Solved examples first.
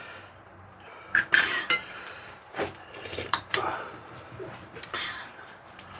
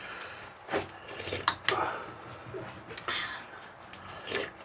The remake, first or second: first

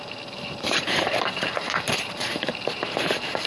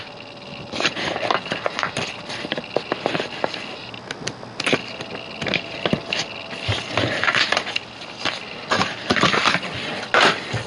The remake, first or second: first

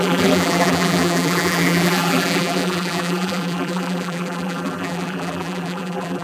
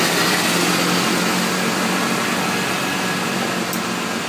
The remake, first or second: first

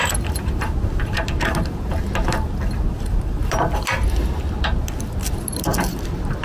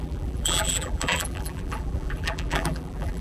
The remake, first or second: second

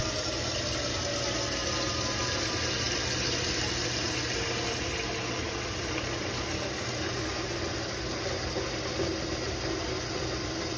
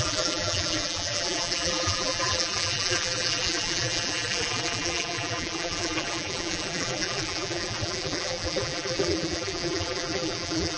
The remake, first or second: second